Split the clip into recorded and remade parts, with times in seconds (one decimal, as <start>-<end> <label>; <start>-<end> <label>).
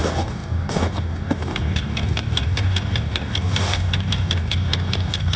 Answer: 0.0-5.4 remade